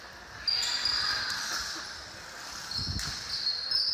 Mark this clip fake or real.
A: real